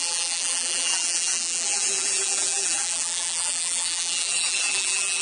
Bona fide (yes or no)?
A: no